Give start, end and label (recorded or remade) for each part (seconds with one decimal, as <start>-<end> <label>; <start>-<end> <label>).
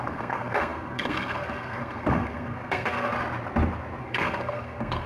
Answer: 0.0-3.1 remade; 3.1-4.0 recorded; 4.0-5.1 remade